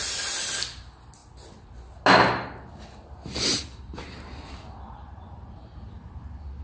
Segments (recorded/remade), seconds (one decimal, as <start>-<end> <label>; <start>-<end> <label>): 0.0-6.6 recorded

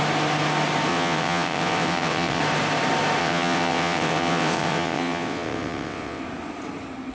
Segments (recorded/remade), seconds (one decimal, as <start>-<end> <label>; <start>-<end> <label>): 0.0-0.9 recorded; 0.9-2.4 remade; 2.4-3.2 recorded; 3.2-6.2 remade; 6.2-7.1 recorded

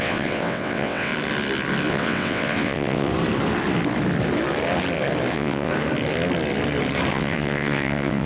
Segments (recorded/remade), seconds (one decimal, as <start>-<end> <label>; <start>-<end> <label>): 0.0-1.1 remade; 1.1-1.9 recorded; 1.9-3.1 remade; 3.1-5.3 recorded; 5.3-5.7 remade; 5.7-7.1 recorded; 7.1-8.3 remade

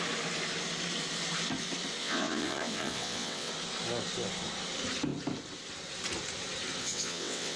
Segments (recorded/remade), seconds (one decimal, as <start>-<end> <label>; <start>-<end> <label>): 0.0-2.0 recorded; 2.0-3.5 remade; 3.5-6.8 recorded; 6.8-7.6 remade

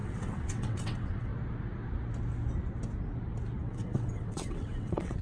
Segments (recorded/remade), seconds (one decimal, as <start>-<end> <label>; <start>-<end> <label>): 0.0-1.3 remade; 1.3-3.6 recorded; 3.6-5.2 remade

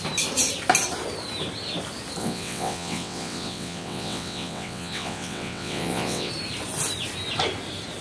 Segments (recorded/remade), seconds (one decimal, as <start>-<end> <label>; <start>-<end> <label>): 0.0-2.2 recorded; 2.2-6.3 remade; 6.3-8.0 recorded

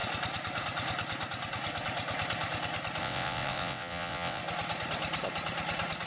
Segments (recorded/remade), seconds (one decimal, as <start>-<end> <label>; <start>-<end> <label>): 0.0-3.0 recorded; 3.0-4.4 remade; 4.4-6.1 recorded